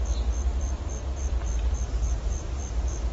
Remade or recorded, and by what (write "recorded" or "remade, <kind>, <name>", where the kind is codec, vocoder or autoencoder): recorded